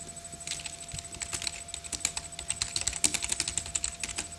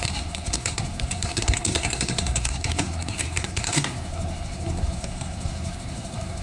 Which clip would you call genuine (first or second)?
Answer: first